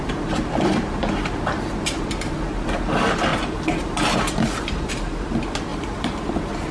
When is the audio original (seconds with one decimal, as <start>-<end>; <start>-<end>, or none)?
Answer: 0.0-3.3; 4.9-5.7; 6.2-6.7